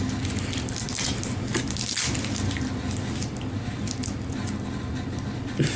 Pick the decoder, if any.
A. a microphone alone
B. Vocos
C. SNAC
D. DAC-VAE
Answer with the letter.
A